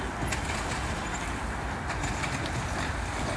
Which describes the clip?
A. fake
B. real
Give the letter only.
B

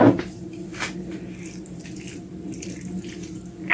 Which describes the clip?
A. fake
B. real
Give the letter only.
B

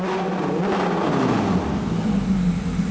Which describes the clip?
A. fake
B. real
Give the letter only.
B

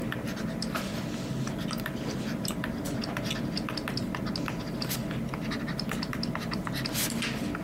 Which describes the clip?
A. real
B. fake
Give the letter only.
A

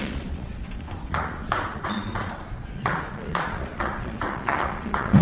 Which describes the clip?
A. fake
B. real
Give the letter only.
A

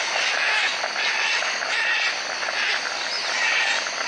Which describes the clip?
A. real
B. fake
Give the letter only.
A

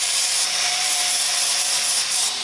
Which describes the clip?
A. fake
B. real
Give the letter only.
A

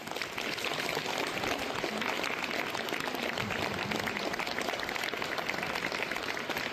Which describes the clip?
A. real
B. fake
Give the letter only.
A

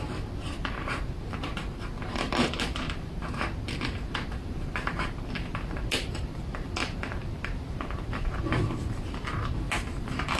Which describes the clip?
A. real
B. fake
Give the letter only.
B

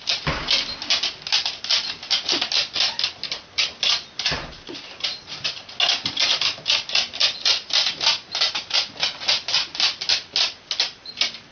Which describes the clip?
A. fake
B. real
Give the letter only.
B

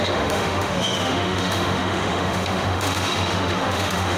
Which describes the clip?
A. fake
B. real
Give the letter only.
A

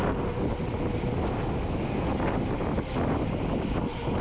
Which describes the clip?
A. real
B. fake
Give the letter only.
A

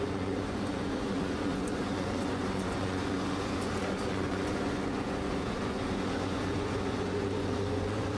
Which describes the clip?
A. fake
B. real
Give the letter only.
A